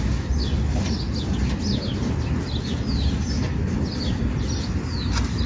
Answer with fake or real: real